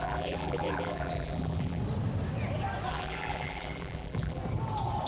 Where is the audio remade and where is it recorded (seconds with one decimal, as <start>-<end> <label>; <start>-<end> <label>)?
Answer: 0.0-1.8 remade; 1.8-2.9 recorded; 2.9-4.4 remade; 4.4-5.1 recorded

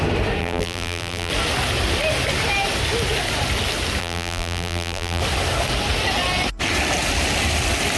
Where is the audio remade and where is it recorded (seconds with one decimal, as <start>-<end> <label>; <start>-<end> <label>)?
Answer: 0.0-0.4 recorded; 0.4-1.3 remade; 1.3-4.0 recorded; 4.0-5.2 remade; 5.2-8.0 recorded

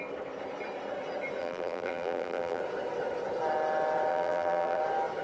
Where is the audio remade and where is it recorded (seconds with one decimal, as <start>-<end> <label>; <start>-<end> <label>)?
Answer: 0.0-1.4 recorded; 1.4-2.6 remade; 2.6-4.1 recorded; 4.1-4.8 remade; 4.8-5.2 recorded

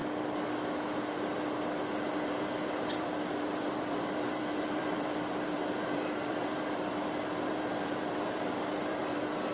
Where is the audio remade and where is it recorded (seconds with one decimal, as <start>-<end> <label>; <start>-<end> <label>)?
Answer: 0.0-2.0 recorded; 2.0-9.5 remade

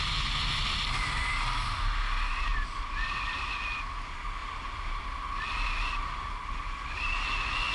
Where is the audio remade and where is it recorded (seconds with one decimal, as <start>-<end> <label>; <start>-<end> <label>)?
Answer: 0.0-2.5 recorded; 2.5-3.6 remade; 3.6-4.4 recorded; 4.4-5.0 remade; 5.0-7.7 recorded

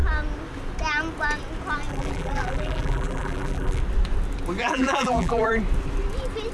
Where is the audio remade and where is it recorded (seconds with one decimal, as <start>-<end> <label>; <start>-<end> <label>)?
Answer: 0.0-1.9 recorded; 1.9-3.8 remade; 3.8-4.6 recorded; 4.6-5.5 remade; 5.5-6.5 recorded

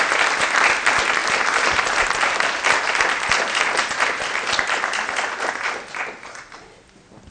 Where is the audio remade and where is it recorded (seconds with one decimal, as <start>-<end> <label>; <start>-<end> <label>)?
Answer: 0.0-7.3 recorded

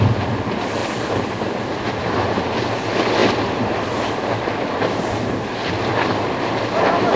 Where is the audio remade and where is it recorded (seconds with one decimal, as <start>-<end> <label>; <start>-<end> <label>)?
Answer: 0.0-7.2 recorded